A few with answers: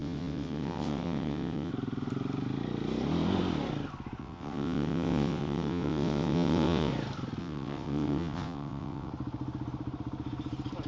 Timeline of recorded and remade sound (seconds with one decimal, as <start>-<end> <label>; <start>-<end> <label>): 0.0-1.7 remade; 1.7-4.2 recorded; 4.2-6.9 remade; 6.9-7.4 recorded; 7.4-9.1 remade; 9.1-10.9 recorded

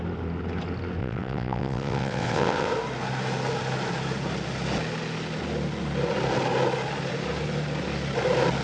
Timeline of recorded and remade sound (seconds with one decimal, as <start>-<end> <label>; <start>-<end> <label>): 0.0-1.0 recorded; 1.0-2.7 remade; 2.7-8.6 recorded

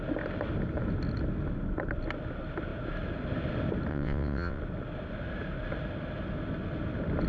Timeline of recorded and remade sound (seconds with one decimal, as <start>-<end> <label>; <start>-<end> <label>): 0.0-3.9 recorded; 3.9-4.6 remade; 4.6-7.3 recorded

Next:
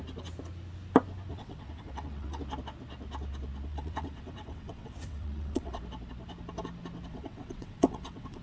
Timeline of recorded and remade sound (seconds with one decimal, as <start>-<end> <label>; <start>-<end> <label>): 0.0-1.3 recorded; 1.3-2.4 remade; 2.4-3.7 recorded; 3.7-5.8 remade; 5.8-7.1 recorded; 7.1-8.4 remade

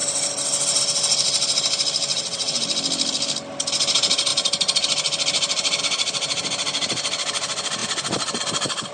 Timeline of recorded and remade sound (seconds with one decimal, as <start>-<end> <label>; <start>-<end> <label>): 0.0-2.1 recorded; 2.1-2.6 remade; 2.6-8.9 recorded

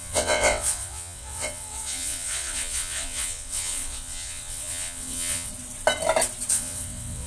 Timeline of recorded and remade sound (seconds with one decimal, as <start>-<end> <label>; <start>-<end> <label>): 0.0-5.5 remade; 5.5-6.5 recorded; 6.5-7.3 remade

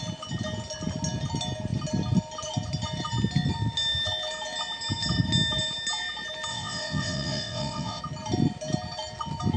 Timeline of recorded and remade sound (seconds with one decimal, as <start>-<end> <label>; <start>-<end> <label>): 0.0-6.5 recorded; 6.5-8.0 remade; 8.0-9.6 recorded

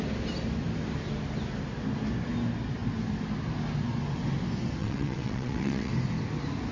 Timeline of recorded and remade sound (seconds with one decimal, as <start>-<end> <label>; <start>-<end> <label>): 0.0-4.8 recorded; 4.8-5.9 remade; 5.9-6.7 recorded